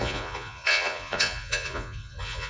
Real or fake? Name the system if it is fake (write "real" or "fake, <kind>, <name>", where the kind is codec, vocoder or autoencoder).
fake, vocoder, Vocos